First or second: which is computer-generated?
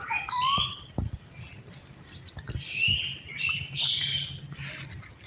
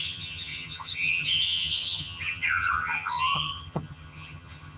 second